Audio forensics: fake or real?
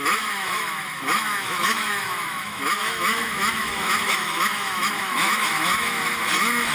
fake